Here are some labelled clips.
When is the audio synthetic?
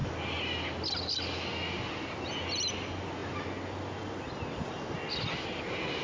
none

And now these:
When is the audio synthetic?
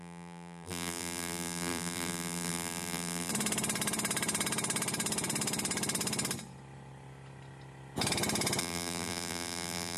0.0-3.3 (vocoder, BigVGAN v2); 8.6-10.0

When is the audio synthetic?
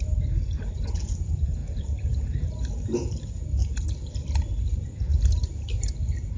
none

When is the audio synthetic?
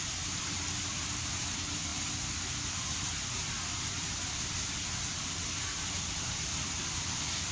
none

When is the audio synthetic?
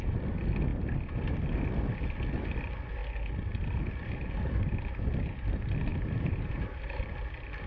5.9-7.7 (vocoder, BigVGAN v2)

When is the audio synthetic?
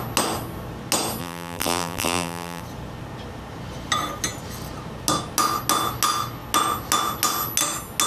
1.2-2.6 (vocoder, BigVGAN v2)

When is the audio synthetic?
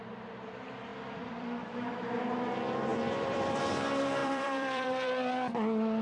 0.9-1.9 (vocoder, BigVGAN v2); 2.9-3.6; 4.2-5.3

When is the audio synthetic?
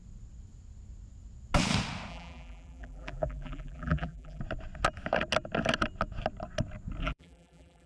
2.1-4.4 (vocoder, BigVGAN v2); 7.0-7.9